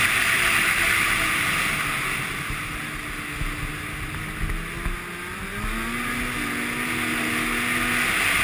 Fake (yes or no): no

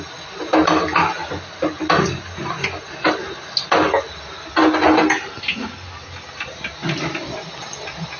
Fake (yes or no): no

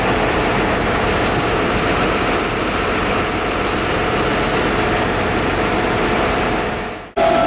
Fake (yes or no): no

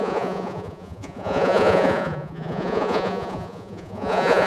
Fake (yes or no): yes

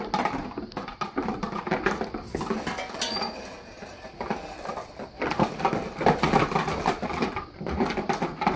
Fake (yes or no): no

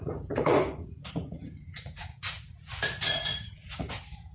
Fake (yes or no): yes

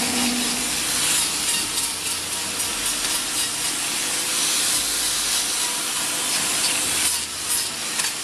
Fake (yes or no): no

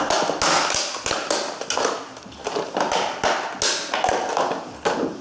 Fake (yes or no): no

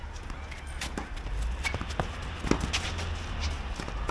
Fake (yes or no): no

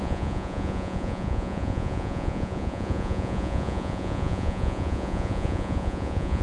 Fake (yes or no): yes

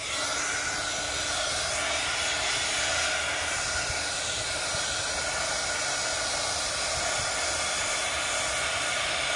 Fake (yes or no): no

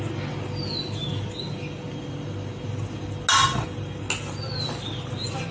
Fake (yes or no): no